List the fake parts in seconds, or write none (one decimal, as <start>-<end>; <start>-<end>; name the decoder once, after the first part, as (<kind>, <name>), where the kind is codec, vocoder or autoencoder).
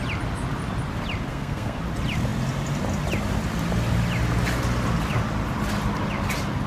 1.3-1.8 (codec, SNAC)